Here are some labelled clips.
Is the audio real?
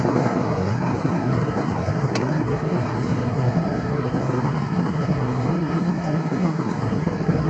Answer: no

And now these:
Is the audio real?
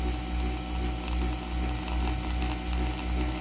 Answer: yes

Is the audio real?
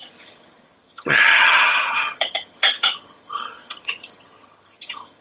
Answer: no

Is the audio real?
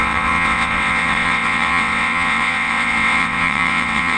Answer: no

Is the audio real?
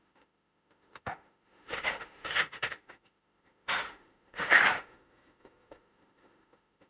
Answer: no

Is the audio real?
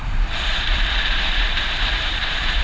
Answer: no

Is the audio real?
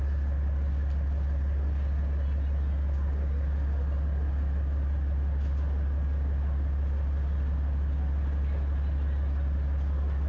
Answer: yes